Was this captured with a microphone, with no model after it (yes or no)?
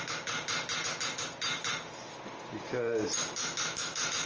yes